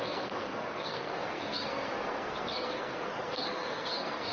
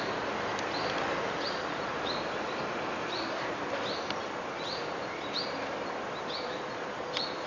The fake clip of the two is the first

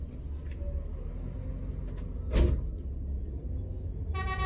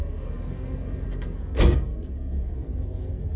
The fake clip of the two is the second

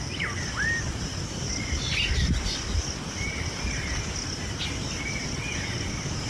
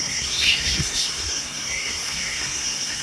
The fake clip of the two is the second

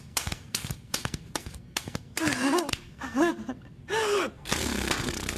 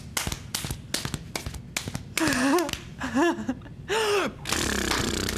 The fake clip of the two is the first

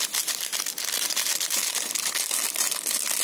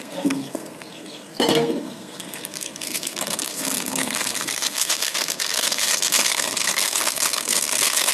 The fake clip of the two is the second